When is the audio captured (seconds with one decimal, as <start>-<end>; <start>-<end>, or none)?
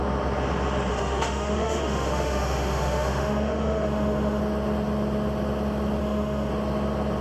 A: 0.0-0.9; 4.4-6.0; 6.5-7.2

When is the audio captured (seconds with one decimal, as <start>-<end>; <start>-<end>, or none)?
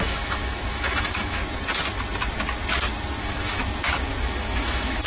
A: 1.4-3.2; 3.6-4.2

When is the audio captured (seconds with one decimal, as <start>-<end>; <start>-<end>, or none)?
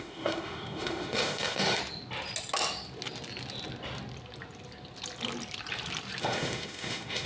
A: 1.8-6.2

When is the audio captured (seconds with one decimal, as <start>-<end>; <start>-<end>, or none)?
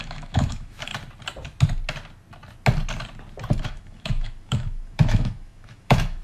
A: 0.9-3.6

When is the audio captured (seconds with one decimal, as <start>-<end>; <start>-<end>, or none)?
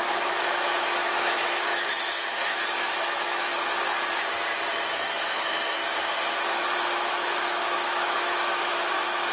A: 3.5-4.9; 5.8-7.1